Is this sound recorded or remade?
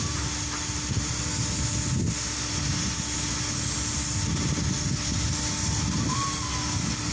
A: recorded